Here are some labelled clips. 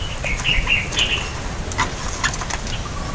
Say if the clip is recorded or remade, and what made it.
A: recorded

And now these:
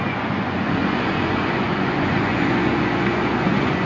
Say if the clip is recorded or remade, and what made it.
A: remade, vocoder, Vocos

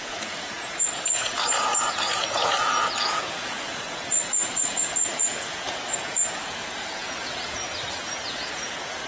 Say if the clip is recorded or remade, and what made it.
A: remade, vocoder, Vocos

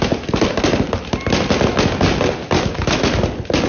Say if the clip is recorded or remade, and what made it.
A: recorded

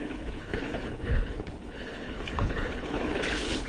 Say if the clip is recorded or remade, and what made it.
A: remade, codec, HILCodec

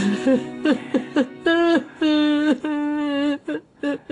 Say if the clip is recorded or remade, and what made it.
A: remade, codec, DAC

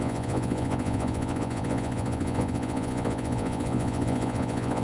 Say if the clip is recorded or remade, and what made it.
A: remade, vocoder, Vocos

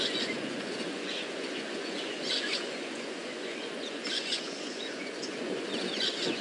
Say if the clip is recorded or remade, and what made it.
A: remade, vocoder, Vocos